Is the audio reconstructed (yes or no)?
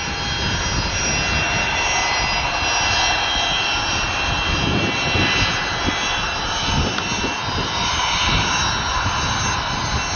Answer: no